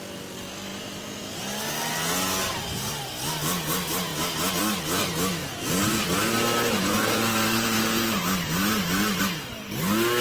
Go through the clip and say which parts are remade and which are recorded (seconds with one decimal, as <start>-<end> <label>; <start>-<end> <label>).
0.0-0.7 recorded; 0.7-1.4 remade; 1.4-5.4 recorded; 5.4-9.2 remade; 9.2-10.2 recorded